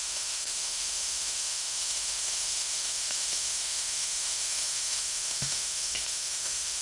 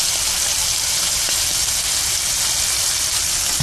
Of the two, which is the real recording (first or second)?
second